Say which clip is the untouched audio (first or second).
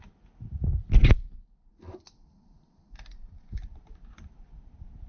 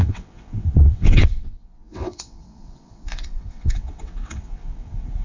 first